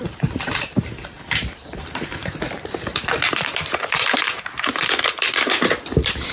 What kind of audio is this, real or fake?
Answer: fake